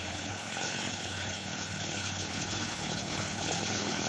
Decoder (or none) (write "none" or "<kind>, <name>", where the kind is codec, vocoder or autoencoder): codec, HILCodec